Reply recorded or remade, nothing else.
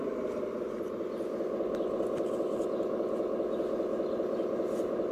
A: recorded